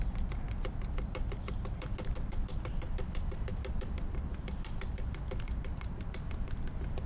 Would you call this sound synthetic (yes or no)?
no